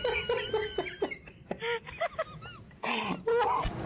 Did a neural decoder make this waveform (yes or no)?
no